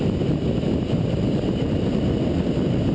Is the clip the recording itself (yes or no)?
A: yes